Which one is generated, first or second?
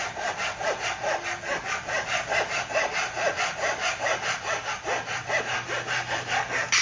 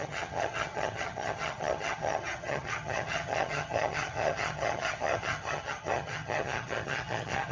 second